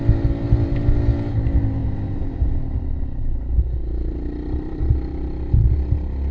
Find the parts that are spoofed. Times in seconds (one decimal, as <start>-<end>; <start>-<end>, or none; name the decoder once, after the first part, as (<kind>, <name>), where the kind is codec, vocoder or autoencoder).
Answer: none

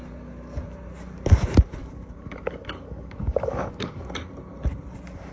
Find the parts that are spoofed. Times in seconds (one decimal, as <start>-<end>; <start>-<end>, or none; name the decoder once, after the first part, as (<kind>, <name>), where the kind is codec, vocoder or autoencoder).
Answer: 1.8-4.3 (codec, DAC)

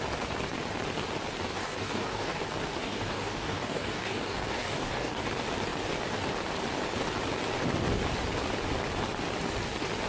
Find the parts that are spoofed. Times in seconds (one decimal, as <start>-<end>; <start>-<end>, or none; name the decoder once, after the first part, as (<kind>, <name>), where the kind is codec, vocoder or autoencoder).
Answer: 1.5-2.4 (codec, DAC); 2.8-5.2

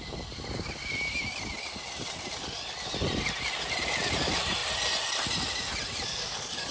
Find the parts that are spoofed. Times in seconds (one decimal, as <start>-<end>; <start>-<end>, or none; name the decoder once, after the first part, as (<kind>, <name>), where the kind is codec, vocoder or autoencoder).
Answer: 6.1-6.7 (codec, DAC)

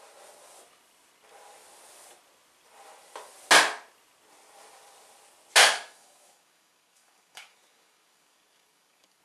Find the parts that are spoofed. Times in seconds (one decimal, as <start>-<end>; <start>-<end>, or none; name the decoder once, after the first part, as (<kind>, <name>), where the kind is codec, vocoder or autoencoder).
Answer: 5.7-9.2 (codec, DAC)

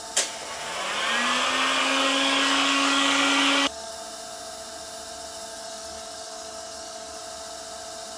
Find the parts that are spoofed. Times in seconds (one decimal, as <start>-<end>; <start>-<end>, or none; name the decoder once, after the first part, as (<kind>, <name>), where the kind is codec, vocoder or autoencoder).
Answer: 1.8-3.9 (codec, DAC); 5.5-7.2

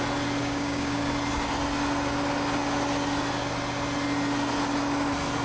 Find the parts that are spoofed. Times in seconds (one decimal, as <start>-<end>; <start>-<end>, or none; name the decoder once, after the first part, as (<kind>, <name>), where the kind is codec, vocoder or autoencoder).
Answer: 0.4-1.0 (codec, DAC)

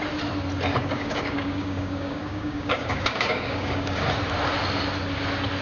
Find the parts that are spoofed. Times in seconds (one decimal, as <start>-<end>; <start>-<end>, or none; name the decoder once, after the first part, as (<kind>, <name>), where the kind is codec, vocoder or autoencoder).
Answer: 0.7-4.1 (codec, DAC)